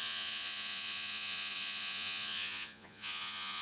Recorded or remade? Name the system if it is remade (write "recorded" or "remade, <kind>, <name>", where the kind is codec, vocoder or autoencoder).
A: remade, vocoder, Vocos